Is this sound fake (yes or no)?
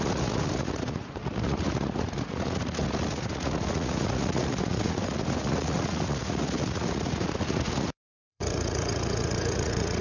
yes